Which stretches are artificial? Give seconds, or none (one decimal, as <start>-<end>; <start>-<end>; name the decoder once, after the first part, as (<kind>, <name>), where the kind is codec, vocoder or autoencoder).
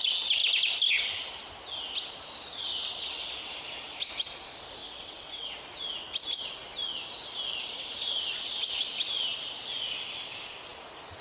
4.8-5.5 (vocoder, WaveNeXt)